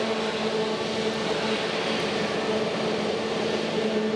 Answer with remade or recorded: recorded